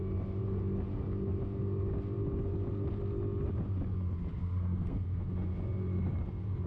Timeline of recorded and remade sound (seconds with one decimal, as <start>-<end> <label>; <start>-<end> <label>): 0.0-4.4 recorded; 4.4-5.3 remade; 5.3-6.7 recorded